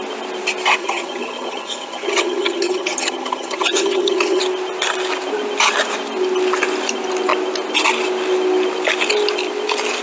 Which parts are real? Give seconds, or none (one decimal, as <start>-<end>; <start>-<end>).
0.0-0.8; 4.4-10.0